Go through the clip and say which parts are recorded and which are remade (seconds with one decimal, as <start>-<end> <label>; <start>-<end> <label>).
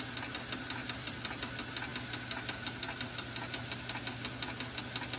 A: 0.0-0.8 recorded; 0.8-1.5 remade; 1.5-5.2 recorded